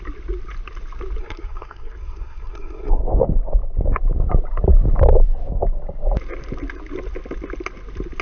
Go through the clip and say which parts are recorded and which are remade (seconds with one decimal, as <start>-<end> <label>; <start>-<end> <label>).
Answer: 0.0-1.2 recorded; 1.2-3.0 remade; 3.0-8.2 recorded